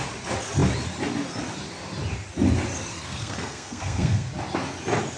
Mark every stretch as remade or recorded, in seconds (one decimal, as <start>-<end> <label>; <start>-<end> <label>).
0.0-2.9 recorded; 2.9-4.3 remade; 4.3-5.2 recorded